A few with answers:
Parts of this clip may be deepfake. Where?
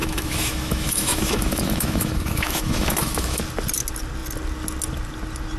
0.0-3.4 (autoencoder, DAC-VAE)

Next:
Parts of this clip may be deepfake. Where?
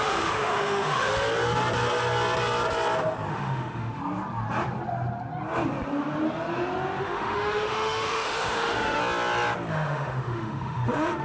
0.0-1.1 (autoencoder, DAC-VAE); 3.3-4.0; 7.0-9.0; 9.7-11.2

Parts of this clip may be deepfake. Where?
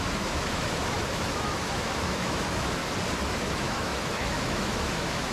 0.0-2.8 (autoencoder, DAC-VAE); 3.4-5.3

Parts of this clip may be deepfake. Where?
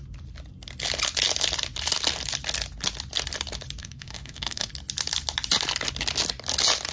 3.8-4.7 (autoencoder, DAC-VAE)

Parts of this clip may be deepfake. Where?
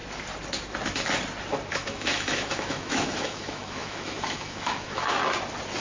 1.7-5.2 (autoencoder, DAC-VAE)